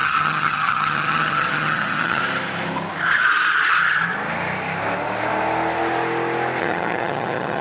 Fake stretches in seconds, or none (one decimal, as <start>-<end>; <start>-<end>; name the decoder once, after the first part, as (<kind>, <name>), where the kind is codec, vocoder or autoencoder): 0.0-2.2 (vocoder, HiFi-GAN); 6.6-7.6